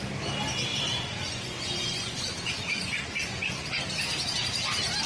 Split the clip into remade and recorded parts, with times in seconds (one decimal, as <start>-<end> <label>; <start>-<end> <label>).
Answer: 0.0-0.7 recorded; 0.7-3.8 remade; 3.8-5.1 recorded